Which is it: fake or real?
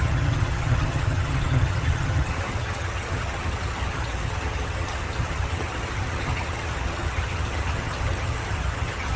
fake